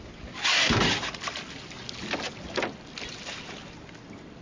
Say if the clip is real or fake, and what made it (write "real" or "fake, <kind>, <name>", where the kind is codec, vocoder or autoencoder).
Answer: real